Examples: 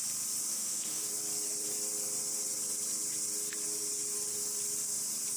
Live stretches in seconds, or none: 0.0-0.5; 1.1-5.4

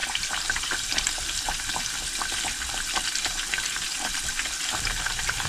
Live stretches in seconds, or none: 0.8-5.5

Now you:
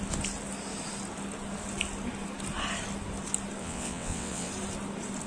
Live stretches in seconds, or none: 0.0-3.6; 4.5-5.3